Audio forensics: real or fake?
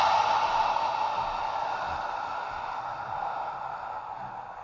real